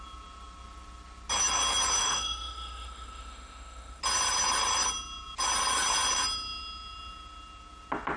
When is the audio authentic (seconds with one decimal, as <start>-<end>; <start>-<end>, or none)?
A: 0.0-2.0; 4.0-8.2